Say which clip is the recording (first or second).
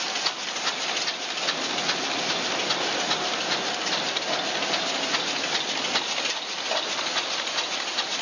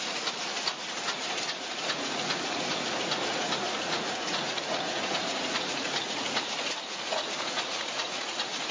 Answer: first